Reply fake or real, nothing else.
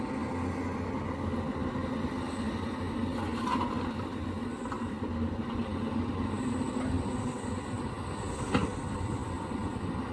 real